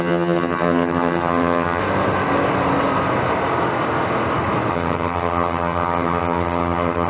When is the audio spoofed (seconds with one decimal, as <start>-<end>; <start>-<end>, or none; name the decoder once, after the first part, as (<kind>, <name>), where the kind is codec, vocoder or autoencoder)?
0.0-1.8 (vocoder, HiFi-GAN); 4.7-7.1